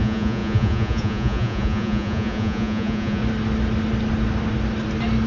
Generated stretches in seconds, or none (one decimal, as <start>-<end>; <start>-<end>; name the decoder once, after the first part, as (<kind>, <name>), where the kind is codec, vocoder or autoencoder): 0.0-3.2 (vocoder, Vocos)